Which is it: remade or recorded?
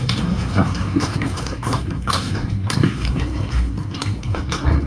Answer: remade